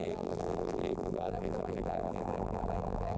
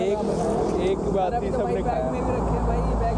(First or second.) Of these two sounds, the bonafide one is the second